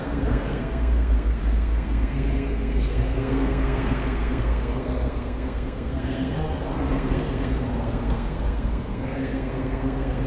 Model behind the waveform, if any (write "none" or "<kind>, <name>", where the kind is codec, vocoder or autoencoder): codec, SNAC